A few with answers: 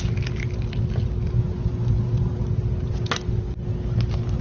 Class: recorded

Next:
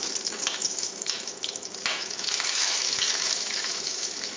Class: remade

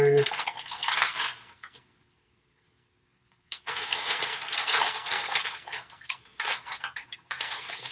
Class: remade